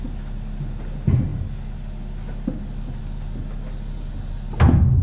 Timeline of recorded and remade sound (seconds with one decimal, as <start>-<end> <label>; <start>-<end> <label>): 0.0-5.0 recorded